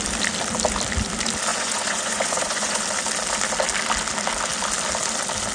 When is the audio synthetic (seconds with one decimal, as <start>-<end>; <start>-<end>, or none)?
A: 1.5-2.8